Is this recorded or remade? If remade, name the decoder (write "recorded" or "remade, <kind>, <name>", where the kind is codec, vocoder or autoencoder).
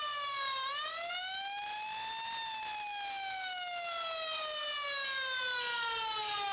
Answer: recorded